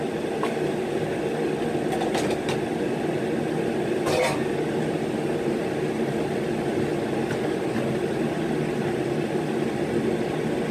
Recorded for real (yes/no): yes